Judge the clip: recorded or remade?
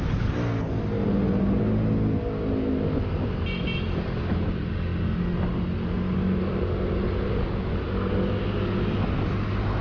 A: recorded